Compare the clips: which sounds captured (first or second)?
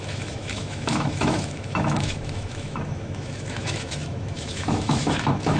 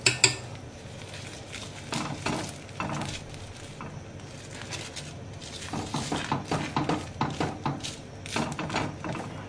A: second